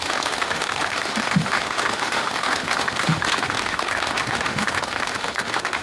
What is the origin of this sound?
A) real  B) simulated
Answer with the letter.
B